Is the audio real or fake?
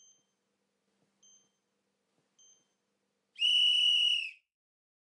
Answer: real